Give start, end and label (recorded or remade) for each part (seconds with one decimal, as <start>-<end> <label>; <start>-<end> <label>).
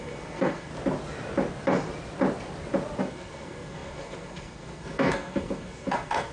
0.0-0.7 remade; 0.7-3.0 recorded; 3.0-6.3 remade